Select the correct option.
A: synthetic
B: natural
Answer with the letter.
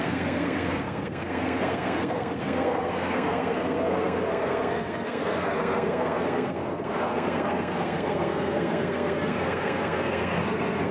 A